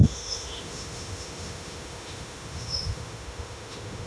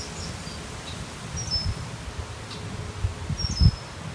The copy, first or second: first